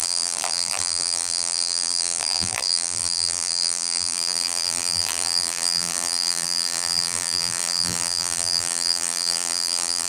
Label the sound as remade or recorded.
remade